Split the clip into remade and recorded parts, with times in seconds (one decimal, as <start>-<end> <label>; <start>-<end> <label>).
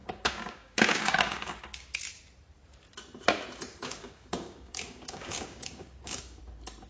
0.0-2.0 remade; 2.0-3.7 recorded; 3.7-6.4 remade; 6.4-6.9 recorded